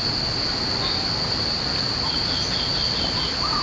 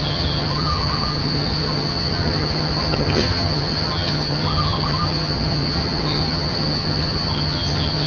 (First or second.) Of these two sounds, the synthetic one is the second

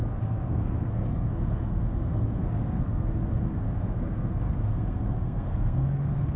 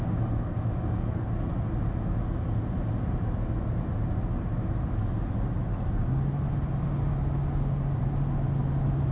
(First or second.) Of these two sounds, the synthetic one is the first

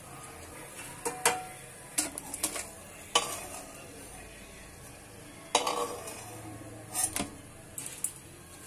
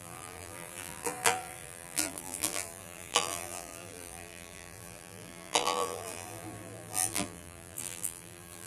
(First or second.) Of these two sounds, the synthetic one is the second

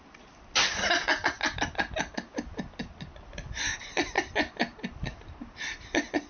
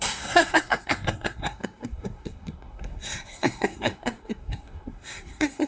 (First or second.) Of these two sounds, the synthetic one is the second